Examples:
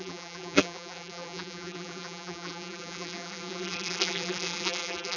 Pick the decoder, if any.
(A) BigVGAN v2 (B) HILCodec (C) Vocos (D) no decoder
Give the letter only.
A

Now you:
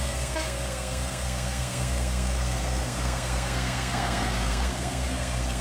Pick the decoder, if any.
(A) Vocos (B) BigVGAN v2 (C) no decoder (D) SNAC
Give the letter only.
D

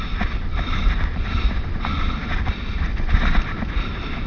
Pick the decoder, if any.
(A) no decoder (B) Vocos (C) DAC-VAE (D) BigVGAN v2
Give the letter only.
A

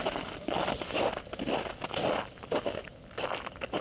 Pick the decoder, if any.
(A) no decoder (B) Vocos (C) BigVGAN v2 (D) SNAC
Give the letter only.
A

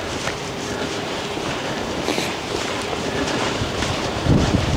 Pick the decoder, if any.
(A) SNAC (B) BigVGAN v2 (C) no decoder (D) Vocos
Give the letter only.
B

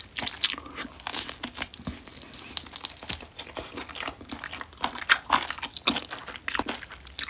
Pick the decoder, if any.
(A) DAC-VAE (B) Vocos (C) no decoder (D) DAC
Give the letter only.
C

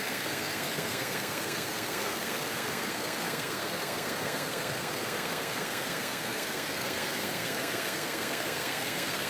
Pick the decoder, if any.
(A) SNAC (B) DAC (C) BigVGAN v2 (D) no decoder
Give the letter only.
A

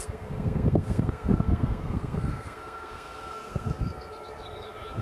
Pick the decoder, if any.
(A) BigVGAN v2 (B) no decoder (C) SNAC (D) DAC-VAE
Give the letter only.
C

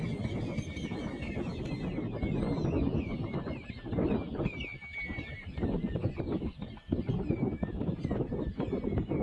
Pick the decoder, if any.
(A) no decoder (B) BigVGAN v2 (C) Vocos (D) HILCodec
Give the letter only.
A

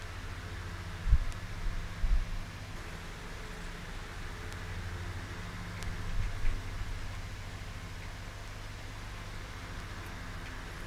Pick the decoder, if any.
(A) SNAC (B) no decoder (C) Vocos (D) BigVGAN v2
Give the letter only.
B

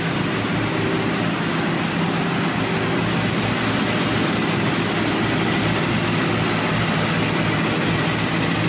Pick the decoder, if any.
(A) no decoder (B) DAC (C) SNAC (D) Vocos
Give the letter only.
A